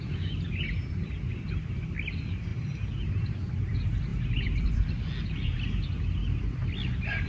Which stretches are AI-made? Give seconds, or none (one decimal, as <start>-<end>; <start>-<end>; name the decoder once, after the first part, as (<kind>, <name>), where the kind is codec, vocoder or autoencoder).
2.5-3.4 (vocoder, BigVGAN v2)